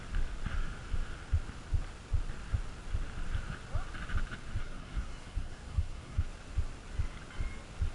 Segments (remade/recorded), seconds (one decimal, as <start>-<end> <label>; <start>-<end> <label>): 0.0-4.6 recorded; 4.6-6.3 remade; 6.3-7.9 recorded